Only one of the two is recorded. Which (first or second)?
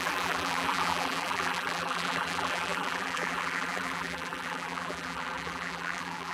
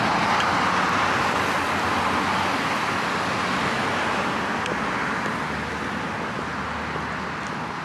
second